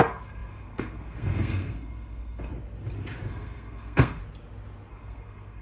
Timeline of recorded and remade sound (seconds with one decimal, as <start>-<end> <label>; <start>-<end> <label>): 0.0-2.5 remade; 2.5-3.3 recorded; 3.3-4.2 remade; 4.2-4.9 recorded; 4.9-5.6 remade